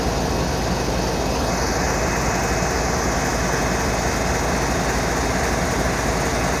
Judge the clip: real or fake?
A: real